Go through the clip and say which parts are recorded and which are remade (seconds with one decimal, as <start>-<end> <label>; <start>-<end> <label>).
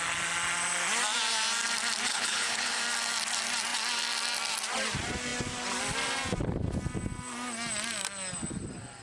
0.0-2.1 recorded; 2.1-2.8 remade; 2.8-9.0 recorded